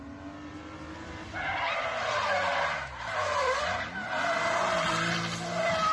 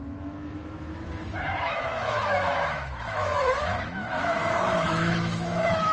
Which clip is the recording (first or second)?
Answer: first